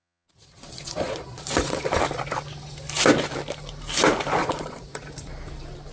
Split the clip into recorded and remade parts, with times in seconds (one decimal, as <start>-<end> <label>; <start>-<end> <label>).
0.0-2.0 remade; 2.0-4.4 recorded; 4.4-5.0 remade; 5.0-5.9 recorded